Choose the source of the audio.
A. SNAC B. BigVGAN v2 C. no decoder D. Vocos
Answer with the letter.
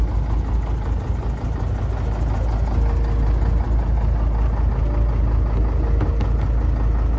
C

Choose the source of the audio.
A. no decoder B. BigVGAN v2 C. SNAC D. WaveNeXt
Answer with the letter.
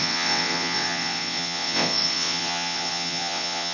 D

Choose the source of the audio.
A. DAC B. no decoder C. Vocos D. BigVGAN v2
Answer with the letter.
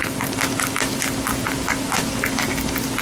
B